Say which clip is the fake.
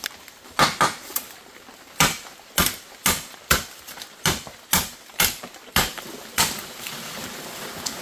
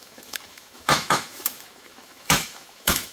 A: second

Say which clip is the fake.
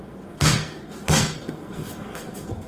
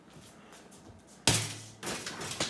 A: first